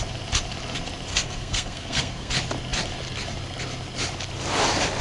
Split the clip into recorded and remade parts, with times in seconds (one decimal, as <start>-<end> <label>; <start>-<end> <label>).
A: 0.0-1.1 recorded; 1.1-2.3 remade; 2.3-5.0 recorded